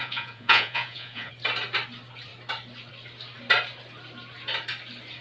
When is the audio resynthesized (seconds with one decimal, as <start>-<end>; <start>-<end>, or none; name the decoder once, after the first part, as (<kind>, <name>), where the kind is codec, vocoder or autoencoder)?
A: 0.0-1.3 (vocoder, Vocos)